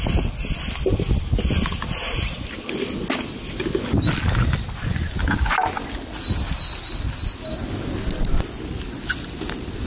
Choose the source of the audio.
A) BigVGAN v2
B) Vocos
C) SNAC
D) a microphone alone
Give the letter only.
D